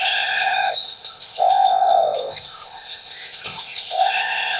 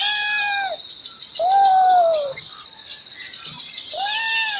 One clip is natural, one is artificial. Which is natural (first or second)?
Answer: second